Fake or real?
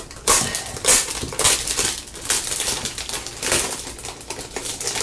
real